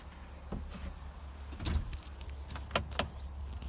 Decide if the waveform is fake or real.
real